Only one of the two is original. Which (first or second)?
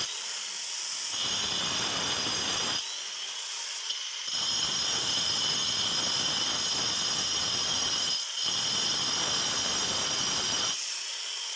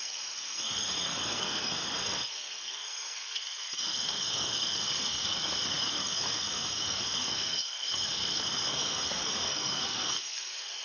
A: first